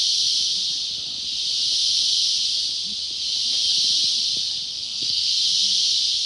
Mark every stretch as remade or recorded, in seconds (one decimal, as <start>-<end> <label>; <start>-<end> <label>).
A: 0.0-4.7 recorded; 4.7-5.4 remade; 5.4-6.3 recorded